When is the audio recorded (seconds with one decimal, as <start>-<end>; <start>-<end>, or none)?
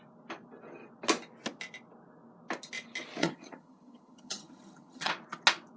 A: 0.0-3.2; 5.1-5.8